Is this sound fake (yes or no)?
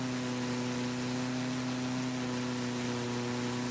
no